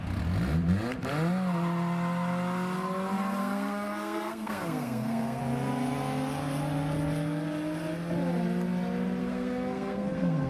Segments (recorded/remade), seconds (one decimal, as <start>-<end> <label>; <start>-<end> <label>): 0.0-3.4 recorded; 3.4-5.4 remade; 5.4-9.2 recorded; 9.2-10.5 remade

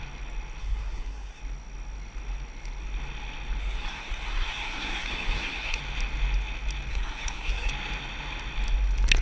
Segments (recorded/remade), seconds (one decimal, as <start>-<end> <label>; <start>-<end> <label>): 0.0-0.6 recorded; 0.6-1.4 remade; 1.4-3.6 recorded; 3.6-5.8 remade; 5.8-6.9 recorded; 6.9-7.7 remade; 7.7-9.2 recorded

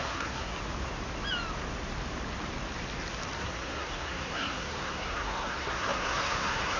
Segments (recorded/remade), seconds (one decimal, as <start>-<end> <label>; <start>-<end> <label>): 0.0-0.5 remade; 0.5-3.4 recorded; 3.4-6.8 remade

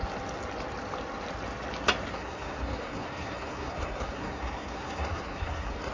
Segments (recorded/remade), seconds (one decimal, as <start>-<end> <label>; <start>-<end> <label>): 0.0-2.1 recorded; 2.1-5.9 remade

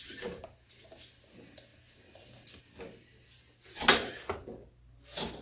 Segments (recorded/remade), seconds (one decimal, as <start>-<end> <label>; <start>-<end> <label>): 0.0-5.4 recorded

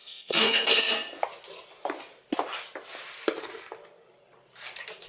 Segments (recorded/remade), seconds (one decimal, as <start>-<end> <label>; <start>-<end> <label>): 0.0-0.9 remade; 0.9-5.1 recorded

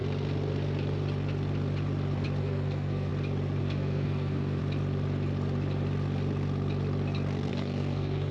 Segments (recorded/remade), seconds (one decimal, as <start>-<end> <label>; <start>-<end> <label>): 0.0-2.4 recorded; 2.4-3.1 remade; 3.1-3.6 recorded; 3.6-4.6 remade; 4.6-7.5 recorded; 7.5-8.3 remade

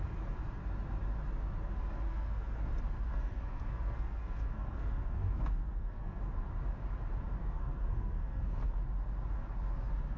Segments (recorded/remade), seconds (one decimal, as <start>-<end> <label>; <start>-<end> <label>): 0.0-2.1 recorded; 2.1-2.7 remade; 2.7-3.1 recorded; 3.1-6.2 remade; 6.2-7.4 recorded; 7.4-8.6 remade; 8.6-10.2 recorded